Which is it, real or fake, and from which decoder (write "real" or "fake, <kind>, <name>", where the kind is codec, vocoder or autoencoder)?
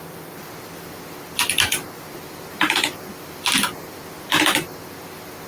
fake, vocoder, BigVGAN v2